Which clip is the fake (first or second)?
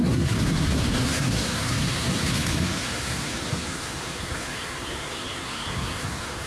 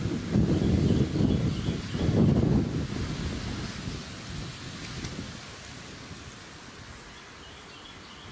first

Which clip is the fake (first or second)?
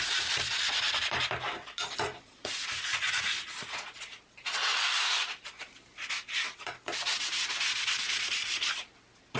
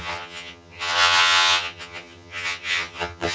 second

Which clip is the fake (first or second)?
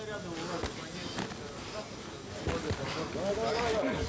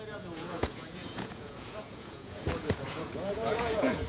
second